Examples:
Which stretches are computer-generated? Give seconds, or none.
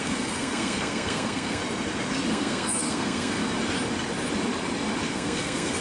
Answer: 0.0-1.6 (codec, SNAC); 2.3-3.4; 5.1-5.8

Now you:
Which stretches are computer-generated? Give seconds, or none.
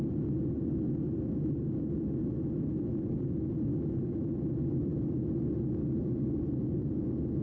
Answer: none